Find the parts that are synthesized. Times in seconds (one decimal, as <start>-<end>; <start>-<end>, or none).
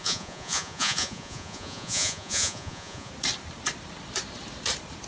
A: 0.0-3.1